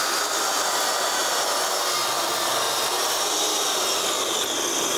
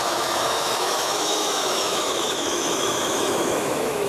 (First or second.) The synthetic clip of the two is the second